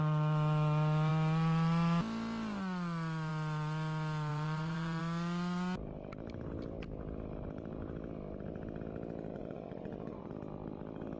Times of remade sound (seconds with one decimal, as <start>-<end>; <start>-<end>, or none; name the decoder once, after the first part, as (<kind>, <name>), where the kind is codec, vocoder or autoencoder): 4.3-5.0 (vocoder, Vocos); 9.3-10.3

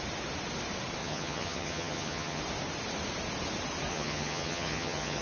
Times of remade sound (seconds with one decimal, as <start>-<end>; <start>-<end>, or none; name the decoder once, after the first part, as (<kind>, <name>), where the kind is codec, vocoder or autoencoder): 1.0-2.4 (vocoder, HiFi-GAN); 3.9-5.2

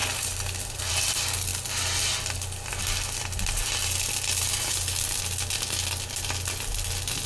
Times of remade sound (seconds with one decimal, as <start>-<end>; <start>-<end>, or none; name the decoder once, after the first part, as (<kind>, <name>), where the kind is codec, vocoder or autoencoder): 0.0-0.9 (vocoder, BigVGAN v2); 1.5-5.2